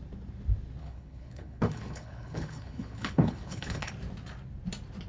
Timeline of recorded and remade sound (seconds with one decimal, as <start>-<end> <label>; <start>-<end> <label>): 0.0-0.8 recorded; 0.8-3.9 remade; 3.9-5.1 recorded